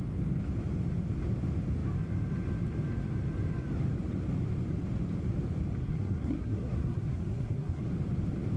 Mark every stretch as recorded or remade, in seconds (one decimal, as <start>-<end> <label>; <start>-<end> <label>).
0.0-5.8 recorded; 5.8-7.8 remade; 7.8-8.6 recorded